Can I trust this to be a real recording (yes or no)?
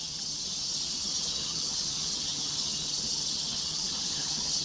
no